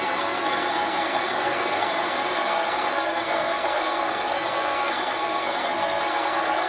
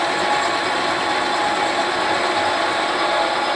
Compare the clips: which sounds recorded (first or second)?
second